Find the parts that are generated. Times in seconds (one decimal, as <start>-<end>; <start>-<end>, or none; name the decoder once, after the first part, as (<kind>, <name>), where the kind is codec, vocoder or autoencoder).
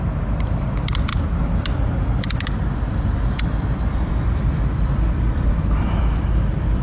0.0-6.8 (vocoder, BigVGAN v2)